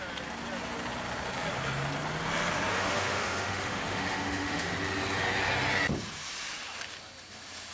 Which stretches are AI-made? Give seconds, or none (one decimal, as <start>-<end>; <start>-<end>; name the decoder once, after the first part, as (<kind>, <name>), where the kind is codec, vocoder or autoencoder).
2.7-4.7 (autoencoder, DAC-VAE)